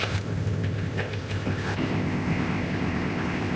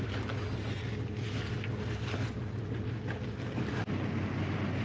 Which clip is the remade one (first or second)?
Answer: first